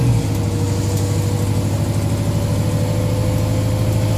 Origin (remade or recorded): recorded